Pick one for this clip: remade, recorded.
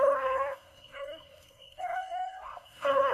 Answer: remade